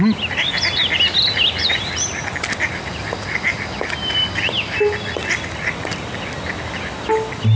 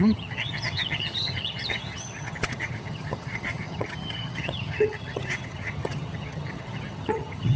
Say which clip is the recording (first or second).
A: first